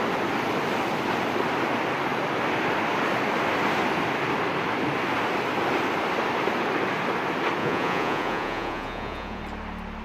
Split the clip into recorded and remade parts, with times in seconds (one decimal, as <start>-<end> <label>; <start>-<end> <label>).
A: 0.0-7.6 recorded; 7.6-9.4 remade; 9.4-10.0 recorded